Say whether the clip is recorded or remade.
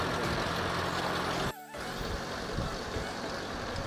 recorded